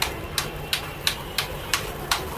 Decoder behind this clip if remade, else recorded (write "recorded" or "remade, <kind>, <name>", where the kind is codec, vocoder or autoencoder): remade, vocoder, BigVGAN v2